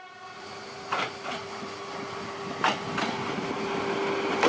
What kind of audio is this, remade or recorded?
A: recorded